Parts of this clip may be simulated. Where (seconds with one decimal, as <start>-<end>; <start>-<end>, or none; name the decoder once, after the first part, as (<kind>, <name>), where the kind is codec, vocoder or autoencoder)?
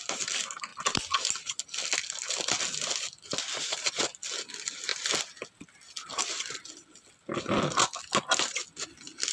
none